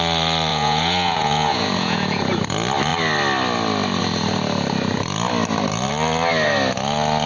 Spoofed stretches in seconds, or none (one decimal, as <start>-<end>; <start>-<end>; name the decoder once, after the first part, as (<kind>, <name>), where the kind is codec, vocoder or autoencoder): 0.5-2.2 (vocoder, Vocos)